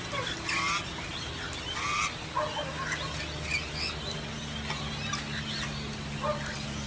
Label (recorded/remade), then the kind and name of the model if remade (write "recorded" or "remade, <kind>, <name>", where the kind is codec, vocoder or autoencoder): recorded